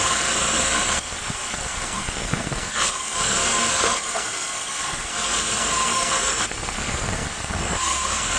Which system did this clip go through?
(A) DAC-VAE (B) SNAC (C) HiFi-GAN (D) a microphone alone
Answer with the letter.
B